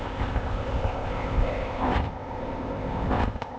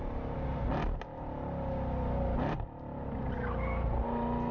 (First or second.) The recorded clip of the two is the second